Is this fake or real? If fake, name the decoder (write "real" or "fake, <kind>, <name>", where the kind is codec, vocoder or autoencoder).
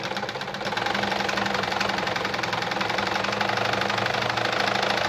real